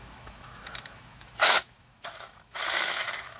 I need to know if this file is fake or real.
fake